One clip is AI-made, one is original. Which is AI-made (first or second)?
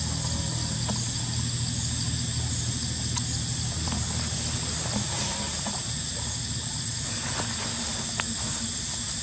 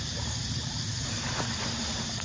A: second